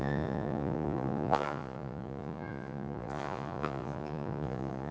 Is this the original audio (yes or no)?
no